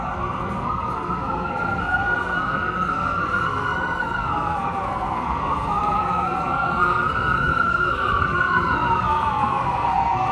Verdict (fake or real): fake